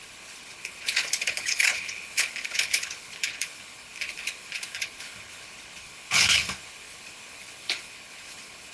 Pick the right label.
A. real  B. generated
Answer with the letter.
B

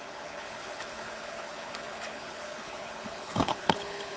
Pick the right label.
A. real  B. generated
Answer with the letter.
B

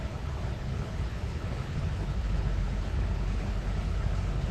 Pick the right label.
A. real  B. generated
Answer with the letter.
B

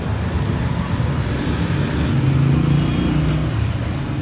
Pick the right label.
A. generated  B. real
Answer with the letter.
B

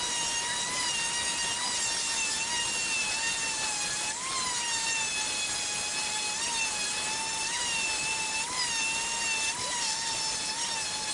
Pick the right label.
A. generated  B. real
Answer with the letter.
B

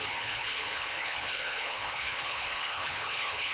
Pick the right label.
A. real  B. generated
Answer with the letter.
B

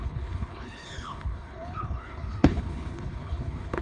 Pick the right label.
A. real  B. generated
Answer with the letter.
B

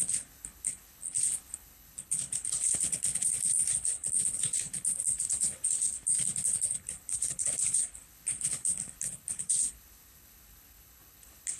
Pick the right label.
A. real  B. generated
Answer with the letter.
B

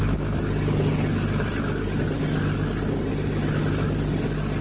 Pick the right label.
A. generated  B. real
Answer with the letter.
B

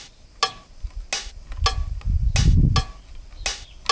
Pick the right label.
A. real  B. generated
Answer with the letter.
A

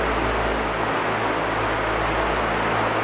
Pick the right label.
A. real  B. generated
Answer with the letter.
A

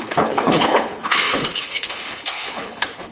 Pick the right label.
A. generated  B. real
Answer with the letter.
A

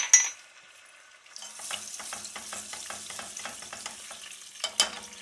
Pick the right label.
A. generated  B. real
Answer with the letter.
B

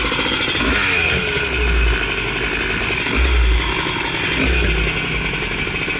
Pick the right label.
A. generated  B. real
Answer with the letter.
B